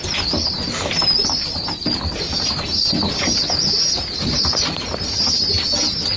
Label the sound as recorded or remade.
recorded